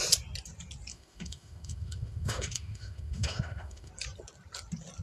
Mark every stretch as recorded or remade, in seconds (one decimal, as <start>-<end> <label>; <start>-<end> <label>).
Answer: 0.0-0.9 recorded; 0.9-3.9 remade; 3.9-5.0 recorded